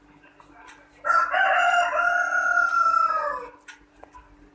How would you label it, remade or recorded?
recorded